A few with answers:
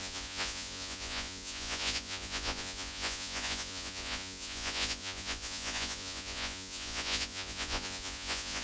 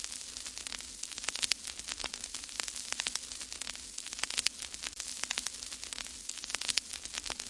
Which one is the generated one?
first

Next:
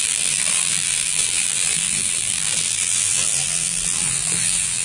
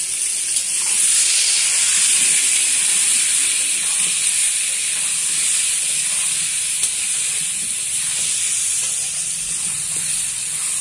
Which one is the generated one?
first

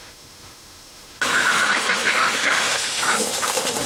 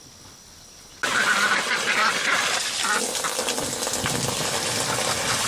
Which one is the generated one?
first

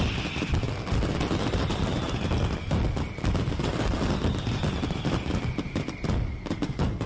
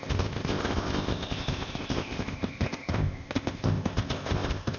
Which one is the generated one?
second